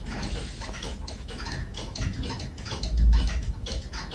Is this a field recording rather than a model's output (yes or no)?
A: no